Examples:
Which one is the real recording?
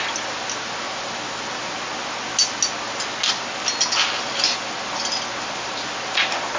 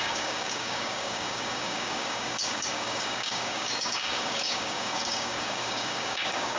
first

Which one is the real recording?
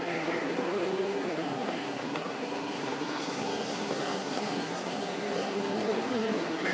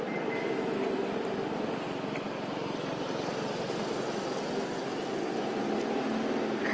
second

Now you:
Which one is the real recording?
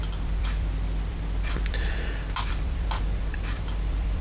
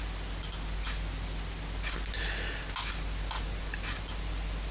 second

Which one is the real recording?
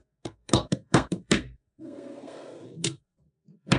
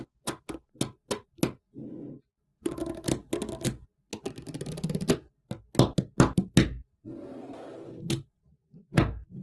second